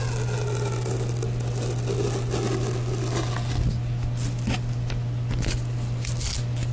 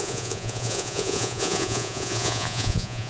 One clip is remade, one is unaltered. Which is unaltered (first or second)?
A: first